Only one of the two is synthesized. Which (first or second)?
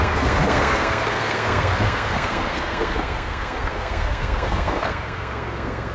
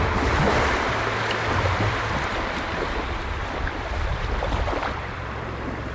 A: first